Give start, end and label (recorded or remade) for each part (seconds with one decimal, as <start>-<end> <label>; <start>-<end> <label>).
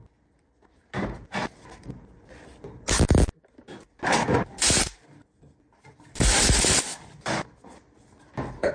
0.0-8.7 recorded